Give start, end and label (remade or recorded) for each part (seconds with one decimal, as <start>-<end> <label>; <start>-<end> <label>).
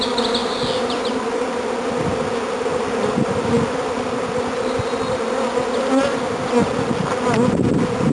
0.0-0.4 recorded; 0.4-1.4 remade; 1.4-8.1 recorded